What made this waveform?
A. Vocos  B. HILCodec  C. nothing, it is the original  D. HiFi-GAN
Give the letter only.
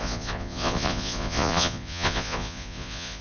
A